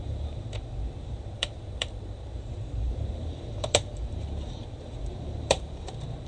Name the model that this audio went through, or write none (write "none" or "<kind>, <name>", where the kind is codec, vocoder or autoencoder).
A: vocoder, BigVGAN v2